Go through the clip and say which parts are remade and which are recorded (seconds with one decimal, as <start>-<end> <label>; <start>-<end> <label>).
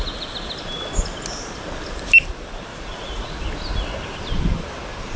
0.0-2.7 recorded; 2.7-3.3 remade; 3.3-5.2 recorded